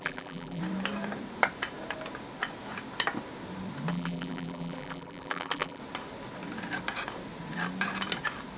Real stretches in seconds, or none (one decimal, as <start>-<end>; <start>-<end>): 0.6-3.9; 5.8-8.6